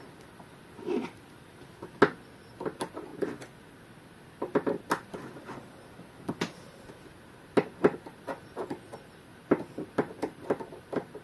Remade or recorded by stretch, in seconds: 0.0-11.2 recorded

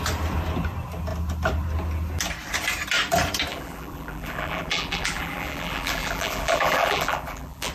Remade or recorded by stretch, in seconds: 0.0-3.5 recorded; 3.5-7.7 remade

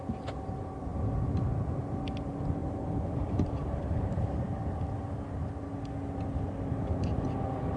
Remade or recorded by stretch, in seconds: 0.0-2.6 recorded; 2.6-4.7 remade; 4.7-7.8 recorded